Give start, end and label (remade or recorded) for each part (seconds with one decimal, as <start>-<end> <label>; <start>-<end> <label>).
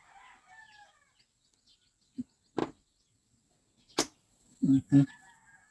0.0-5.7 recorded